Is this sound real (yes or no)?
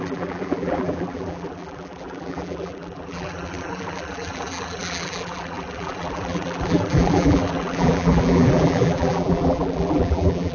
no